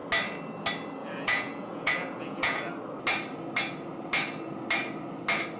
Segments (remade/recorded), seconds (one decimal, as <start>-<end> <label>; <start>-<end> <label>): 0.0-1.0 recorded; 1.0-2.7 remade; 2.7-5.6 recorded